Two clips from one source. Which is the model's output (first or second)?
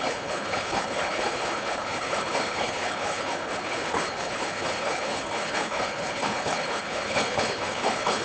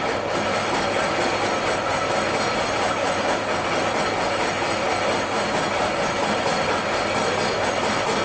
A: first